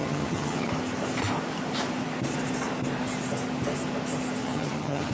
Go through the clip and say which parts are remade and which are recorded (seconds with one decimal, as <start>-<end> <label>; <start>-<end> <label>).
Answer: 0.0-0.7 remade; 0.7-4.4 recorded; 4.4-5.1 remade

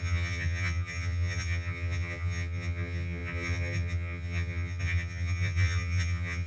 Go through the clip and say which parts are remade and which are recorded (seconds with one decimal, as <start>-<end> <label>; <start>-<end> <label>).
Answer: 0.0-6.5 remade

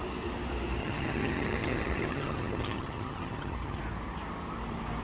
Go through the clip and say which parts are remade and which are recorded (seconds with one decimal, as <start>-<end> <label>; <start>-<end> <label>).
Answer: 0.0-0.8 recorded; 0.8-3.8 remade; 3.8-5.0 recorded